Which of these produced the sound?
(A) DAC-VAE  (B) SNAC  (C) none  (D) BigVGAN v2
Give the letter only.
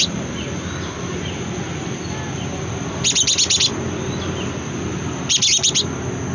C